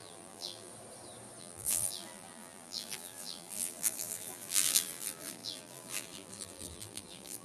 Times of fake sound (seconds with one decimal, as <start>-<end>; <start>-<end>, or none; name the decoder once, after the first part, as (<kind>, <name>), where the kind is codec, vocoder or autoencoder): 0.0-0.7 (vocoder, BigVGAN v2); 1.4-7.4